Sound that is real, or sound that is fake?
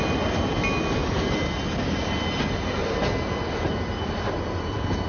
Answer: real